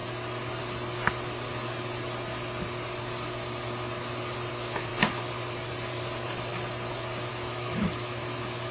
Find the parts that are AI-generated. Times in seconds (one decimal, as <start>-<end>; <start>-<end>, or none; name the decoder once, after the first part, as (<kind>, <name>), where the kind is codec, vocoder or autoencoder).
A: 4.5-4.9 (autoencoder, DAC-VAE); 7.3-8.7